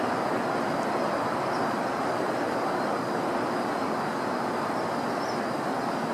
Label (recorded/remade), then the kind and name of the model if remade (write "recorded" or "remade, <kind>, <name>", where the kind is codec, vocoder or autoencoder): recorded